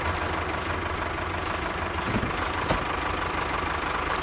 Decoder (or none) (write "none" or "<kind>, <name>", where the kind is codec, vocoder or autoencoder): none